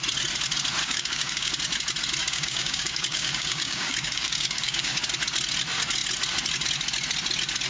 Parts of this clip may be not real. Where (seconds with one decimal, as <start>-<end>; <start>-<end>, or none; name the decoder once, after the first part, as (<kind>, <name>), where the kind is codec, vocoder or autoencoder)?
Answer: 0.8-1.5 (codec, DAC); 2.2-5.0